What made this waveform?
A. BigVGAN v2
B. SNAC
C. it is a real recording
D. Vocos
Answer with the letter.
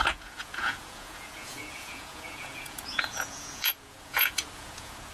D